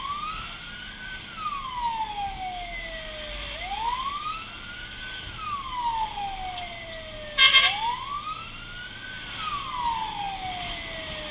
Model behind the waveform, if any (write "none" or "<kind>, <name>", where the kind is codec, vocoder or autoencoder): none